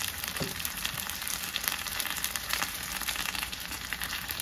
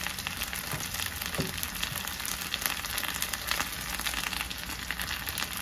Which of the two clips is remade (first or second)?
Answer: first